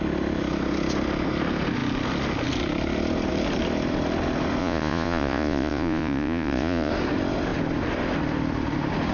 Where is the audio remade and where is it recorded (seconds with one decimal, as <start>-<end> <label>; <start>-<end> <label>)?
0.0-4.6 recorded; 4.6-6.9 remade; 6.9-9.1 recorded